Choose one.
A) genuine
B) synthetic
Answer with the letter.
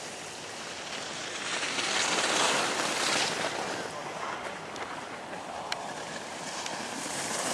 A